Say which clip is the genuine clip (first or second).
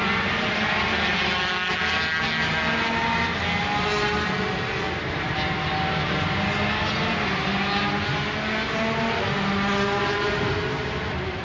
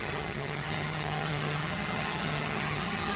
first